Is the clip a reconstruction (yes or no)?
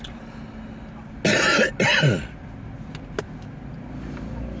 no